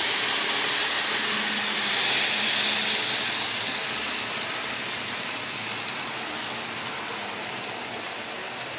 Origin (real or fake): real